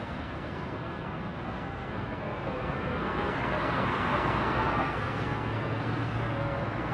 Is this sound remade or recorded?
remade